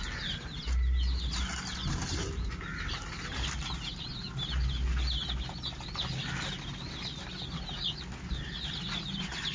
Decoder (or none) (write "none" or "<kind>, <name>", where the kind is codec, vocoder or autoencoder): none